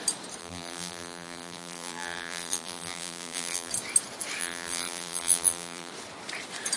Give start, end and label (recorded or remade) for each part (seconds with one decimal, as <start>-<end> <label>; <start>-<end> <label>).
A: 0.0-0.4 recorded; 0.4-3.7 remade; 3.7-4.4 recorded; 4.4-5.9 remade; 5.9-6.8 recorded